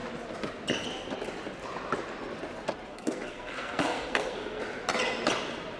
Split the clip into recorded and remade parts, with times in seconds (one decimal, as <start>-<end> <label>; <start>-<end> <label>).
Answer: 0.0-2.9 recorded; 2.9-4.6 remade; 4.6-5.8 recorded